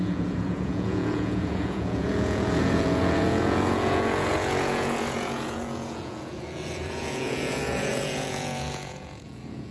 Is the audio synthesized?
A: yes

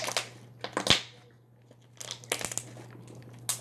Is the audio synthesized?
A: no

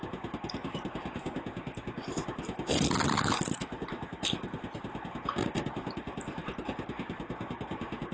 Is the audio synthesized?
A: no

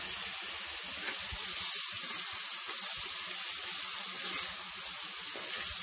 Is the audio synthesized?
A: no